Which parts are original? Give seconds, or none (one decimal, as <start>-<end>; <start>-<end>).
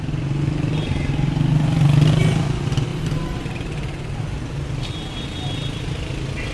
0.0-2.9; 4.4-6.5